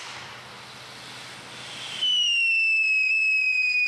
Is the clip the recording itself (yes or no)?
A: yes